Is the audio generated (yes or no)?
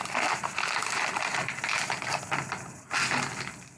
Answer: no